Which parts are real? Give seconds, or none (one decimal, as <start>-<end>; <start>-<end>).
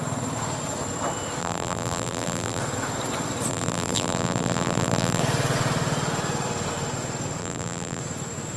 0.0-1.4; 2.6-3.5; 5.2-7.4; 8.0-8.6